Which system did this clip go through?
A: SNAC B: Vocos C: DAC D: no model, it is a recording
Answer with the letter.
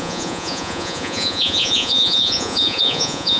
B